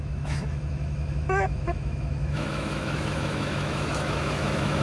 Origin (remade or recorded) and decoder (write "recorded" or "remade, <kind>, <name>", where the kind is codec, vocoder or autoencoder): remade, autoencoder, DAC-VAE